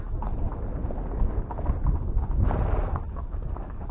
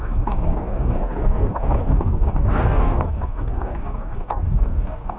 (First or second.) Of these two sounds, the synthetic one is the second